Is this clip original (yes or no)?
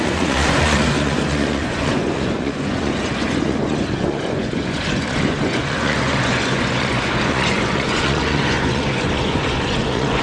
no